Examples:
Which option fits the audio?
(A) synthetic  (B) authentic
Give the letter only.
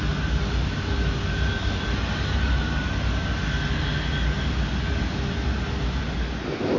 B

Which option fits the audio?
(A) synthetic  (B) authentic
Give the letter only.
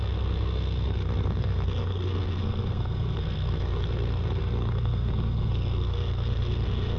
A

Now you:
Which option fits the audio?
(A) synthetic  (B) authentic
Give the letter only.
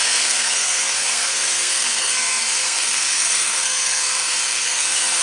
A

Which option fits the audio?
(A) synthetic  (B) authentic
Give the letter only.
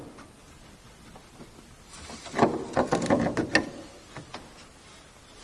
B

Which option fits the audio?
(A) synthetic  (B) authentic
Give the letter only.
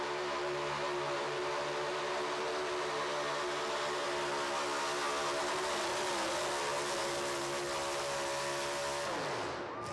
B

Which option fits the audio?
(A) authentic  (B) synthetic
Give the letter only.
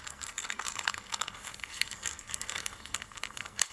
B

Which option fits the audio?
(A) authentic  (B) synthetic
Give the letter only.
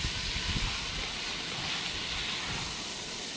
A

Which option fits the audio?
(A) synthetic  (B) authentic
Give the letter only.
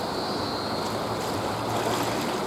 B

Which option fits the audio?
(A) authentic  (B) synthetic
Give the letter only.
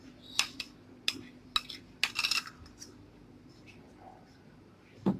A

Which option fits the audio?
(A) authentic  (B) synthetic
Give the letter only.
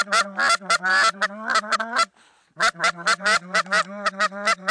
A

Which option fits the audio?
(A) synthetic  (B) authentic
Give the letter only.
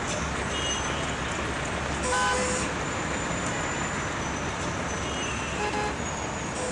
B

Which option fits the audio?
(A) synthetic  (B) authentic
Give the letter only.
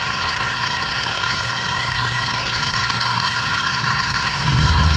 A